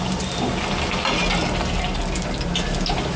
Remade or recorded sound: recorded